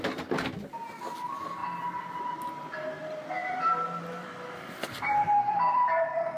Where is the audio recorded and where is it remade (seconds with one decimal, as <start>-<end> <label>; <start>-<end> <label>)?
0.0-3.4 recorded; 3.4-5.9 remade; 5.9-6.4 recorded